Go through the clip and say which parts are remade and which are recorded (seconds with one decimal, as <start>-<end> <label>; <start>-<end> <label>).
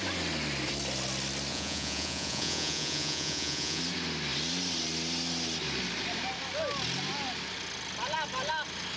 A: 0.0-1.5 recorded; 1.5-3.8 remade; 3.8-9.0 recorded